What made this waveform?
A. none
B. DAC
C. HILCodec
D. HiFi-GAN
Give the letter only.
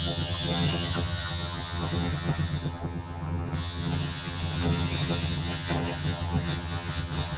D